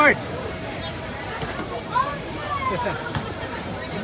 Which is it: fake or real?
fake